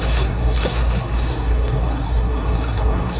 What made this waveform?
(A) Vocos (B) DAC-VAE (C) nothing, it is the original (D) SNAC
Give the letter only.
D